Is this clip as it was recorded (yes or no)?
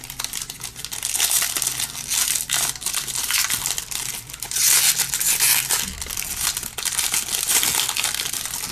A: yes